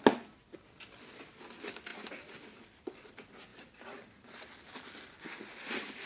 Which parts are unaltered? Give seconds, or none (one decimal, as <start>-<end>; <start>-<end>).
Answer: 0.0-3.5; 4.7-6.1